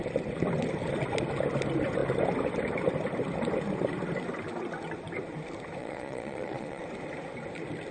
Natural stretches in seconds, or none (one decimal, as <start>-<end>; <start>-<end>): 0.0-5.8; 6.8-7.9